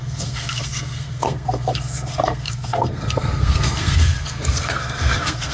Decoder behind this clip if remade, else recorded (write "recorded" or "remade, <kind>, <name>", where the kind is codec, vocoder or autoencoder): remade, codec, SNAC